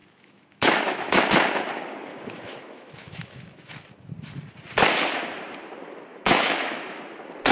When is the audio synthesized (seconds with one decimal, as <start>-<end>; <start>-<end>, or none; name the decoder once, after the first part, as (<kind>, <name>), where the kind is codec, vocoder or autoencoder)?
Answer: 0.0-1.2 (autoencoder, DAC-VAE); 2.1-3.7; 6.1-7.0